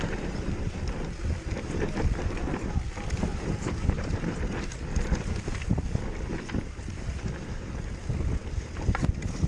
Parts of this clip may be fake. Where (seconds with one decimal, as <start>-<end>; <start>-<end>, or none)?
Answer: 3.3-4.6; 6.1-7.2